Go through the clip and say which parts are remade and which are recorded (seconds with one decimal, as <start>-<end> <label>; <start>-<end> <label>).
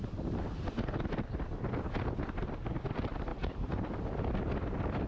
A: 0.0-3.3 recorded; 3.3-4.3 remade; 4.3-5.1 recorded